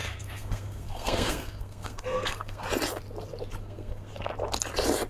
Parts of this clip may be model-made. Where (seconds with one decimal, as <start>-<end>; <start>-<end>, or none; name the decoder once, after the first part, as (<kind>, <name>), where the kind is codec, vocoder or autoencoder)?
0.0-2.6 (codec, SNAC); 3.6-4.1